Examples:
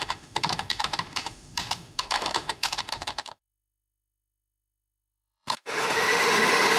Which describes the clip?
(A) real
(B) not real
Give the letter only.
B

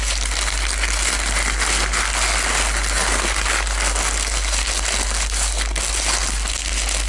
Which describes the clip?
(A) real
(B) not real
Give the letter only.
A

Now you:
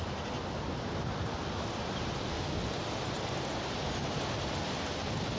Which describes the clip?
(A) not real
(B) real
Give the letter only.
B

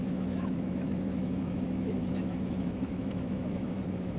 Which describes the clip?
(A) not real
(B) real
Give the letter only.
A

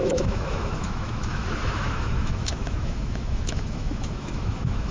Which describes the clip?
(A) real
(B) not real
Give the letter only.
B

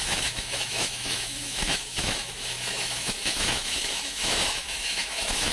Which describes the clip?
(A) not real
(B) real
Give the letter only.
A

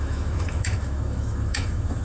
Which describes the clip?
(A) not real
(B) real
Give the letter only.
A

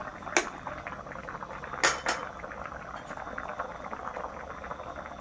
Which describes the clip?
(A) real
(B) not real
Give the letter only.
A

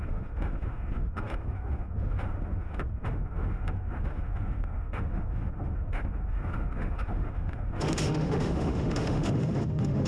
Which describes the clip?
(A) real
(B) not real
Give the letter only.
B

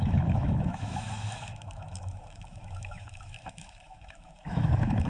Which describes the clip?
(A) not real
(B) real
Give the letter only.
A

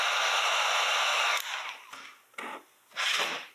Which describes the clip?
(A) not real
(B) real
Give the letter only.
B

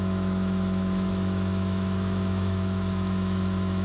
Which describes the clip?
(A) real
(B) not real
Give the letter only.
B